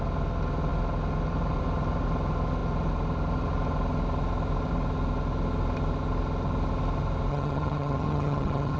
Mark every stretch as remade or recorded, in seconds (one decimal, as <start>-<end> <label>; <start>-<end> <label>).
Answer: 0.0-7.3 recorded; 7.3-8.8 remade